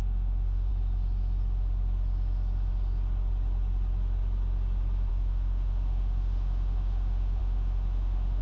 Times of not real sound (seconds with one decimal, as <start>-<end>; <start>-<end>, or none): 0.0-0.7; 5.1-8.4